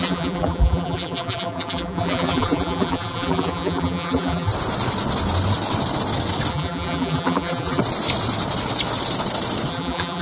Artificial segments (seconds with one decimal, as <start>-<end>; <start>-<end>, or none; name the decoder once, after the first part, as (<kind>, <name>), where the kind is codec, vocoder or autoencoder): 0.0-4.5 (vocoder, BigVGAN v2); 6.5-7.8; 9.7-10.2